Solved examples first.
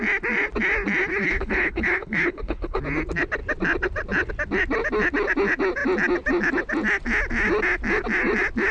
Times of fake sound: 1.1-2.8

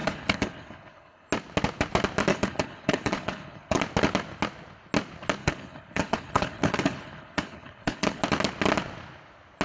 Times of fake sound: 0.0-1.3; 2.3-3.8; 5.4-8.2

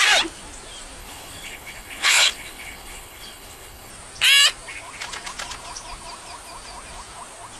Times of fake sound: 1.0-3.9

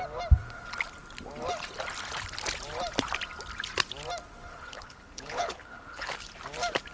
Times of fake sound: 4.5-6.1

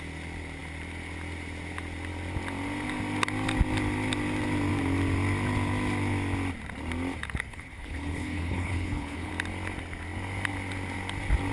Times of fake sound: 7.5-9.3

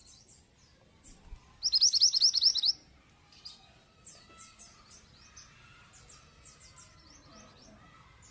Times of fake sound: none

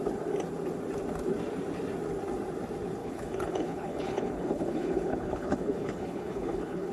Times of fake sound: 3.0-6.9

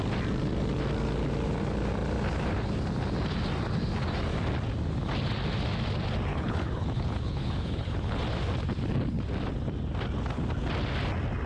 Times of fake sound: 6.3-8.2